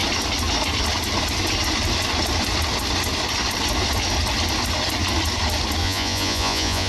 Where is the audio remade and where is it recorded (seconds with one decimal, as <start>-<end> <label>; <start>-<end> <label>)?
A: 0.0-5.8 recorded; 5.8-6.9 remade